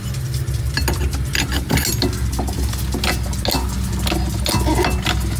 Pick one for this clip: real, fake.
real